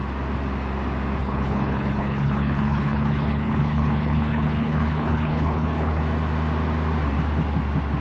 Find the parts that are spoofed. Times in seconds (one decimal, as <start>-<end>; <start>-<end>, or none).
1.2-6.0